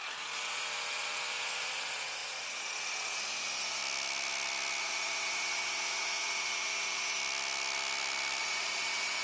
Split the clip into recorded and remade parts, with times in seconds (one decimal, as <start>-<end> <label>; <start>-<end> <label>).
0.0-3.8 remade; 3.8-4.8 recorded; 4.8-7.2 remade; 7.2-8.4 recorded; 8.4-9.2 remade